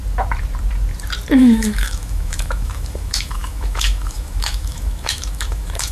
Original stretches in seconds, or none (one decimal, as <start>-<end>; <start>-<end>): 0.0-1.4